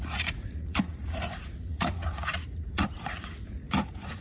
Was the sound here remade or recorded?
remade